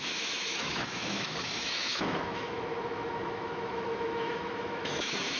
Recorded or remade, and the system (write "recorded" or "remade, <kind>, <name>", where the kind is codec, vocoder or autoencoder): remade, autoencoder, DAC-VAE